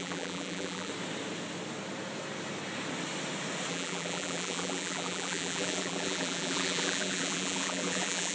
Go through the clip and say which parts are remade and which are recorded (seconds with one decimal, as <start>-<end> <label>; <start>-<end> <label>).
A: 0.0-0.9 remade; 0.9-3.7 recorded; 3.7-8.3 remade